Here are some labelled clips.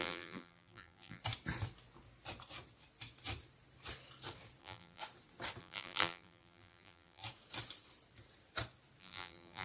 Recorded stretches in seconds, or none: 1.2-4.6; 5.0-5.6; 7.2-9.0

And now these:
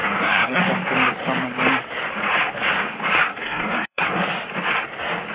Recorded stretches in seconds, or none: 0.6-3.3; 4.1-5.3

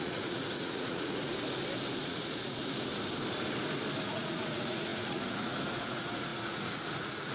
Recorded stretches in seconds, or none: 1.3-2.0; 2.6-4.0

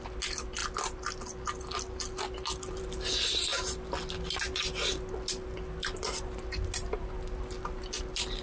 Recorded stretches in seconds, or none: 0.0-8.4

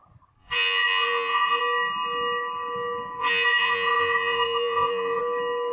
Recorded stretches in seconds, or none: 0.0-0.4; 1.6-3.2; 5.2-5.7

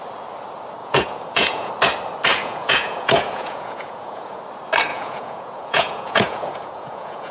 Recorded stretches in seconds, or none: 0.0-0.8; 1.7-2.3; 4.4-4.9

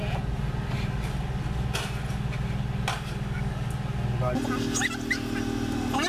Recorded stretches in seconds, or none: 0.0-2.9; 3.7-6.1